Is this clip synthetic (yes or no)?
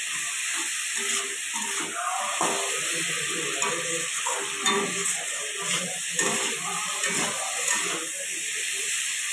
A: no